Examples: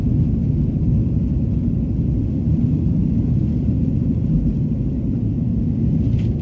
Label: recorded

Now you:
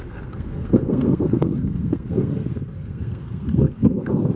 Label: remade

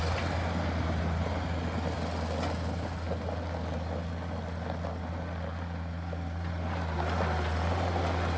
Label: recorded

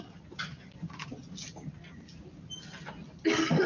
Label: recorded